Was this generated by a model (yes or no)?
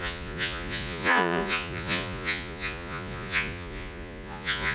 yes